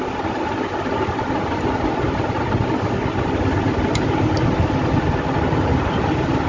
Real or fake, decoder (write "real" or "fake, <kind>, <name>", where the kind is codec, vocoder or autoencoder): real